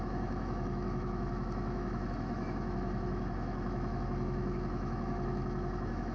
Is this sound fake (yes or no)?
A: yes